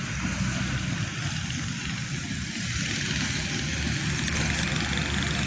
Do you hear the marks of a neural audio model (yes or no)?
no